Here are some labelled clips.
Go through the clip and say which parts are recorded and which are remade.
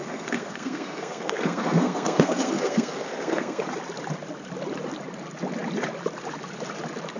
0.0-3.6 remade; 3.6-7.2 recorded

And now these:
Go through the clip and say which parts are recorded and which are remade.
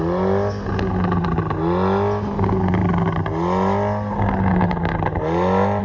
0.0-5.8 recorded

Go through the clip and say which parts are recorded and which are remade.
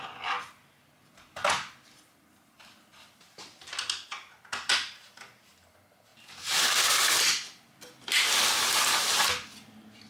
0.0-10.1 recorded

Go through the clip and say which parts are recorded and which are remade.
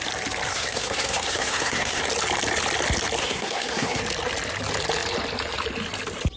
0.0-0.5 recorded; 0.5-2.0 remade; 2.0-3.2 recorded; 3.2-4.0 remade; 4.0-6.4 recorded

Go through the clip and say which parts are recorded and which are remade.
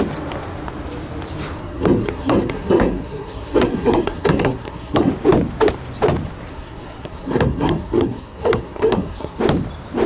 0.0-1.6 recorded; 1.6-5.1 remade; 5.1-6.5 recorded; 6.5-9.4 remade; 9.4-10.1 recorded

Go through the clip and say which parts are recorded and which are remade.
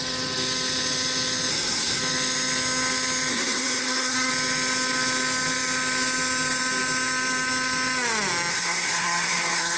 0.0-1.5 recorded; 1.5-2.0 remade; 2.0-3.3 recorded; 3.3-4.3 remade; 4.3-8.5 recorded; 8.5-9.8 remade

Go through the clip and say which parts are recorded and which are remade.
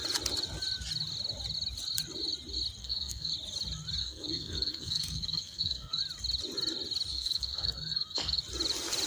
0.0-2.8 recorded; 2.8-3.3 remade; 3.3-4.0 recorded; 4.0-6.0 remade; 6.0-7.1 recorded; 7.1-8.4 remade; 8.4-9.1 recorded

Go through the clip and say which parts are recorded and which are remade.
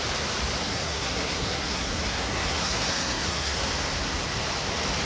0.0-0.6 recorded; 0.6-3.7 remade; 3.7-5.1 recorded